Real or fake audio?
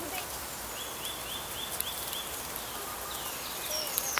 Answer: real